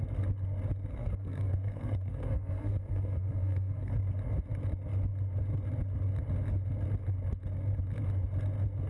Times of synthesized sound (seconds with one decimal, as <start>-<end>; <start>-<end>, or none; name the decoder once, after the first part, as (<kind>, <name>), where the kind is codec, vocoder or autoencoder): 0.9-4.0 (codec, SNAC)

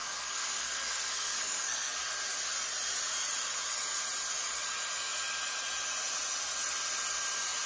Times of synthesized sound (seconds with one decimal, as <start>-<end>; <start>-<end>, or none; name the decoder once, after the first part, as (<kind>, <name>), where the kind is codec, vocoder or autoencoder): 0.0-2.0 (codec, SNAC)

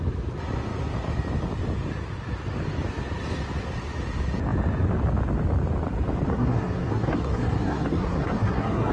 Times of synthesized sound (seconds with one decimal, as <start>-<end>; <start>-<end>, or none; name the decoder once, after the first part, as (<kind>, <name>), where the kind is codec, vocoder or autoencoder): 6.3-8.9 (codec, SNAC)

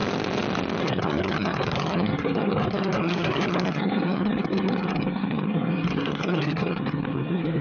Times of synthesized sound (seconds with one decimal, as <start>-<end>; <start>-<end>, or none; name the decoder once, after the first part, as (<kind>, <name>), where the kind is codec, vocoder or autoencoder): 0.8-7.6 (codec, SNAC)